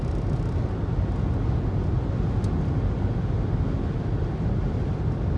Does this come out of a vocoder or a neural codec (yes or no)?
no